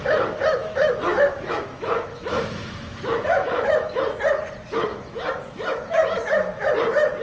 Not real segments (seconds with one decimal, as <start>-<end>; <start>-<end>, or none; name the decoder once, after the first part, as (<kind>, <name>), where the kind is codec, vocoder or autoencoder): 0.6-4.0 (autoencoder, DAC-VAE); 4.9-6.7